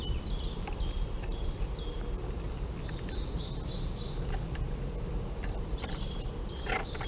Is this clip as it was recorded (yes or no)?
yes